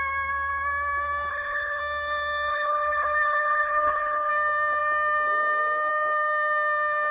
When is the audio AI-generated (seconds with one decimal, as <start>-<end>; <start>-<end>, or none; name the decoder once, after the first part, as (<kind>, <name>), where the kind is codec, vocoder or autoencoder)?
1.3-1.8 (codec, HILCodec); 2.5-4.3